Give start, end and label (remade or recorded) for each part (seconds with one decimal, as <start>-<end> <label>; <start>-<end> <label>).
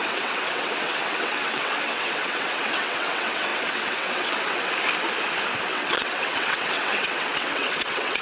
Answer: 0.0-4.6 remade; 4.6-5.7 recorded; 5.7-8.2 remade